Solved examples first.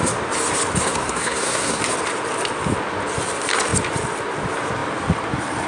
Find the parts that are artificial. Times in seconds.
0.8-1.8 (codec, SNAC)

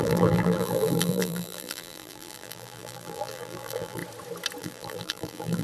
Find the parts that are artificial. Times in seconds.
0.0-4.0 (vocoder, BigVGAN v2); 4.6-5.6